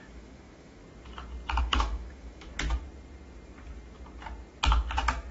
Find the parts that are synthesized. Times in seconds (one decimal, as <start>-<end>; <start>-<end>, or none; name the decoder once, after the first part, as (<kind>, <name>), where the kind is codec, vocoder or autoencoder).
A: 0.0-0.8 (autoencoder, DAC-VAE); 1.6-2.5